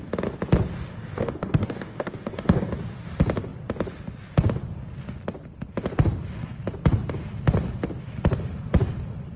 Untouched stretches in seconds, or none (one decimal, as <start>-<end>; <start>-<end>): 0.0-0.9; 2.7-9.4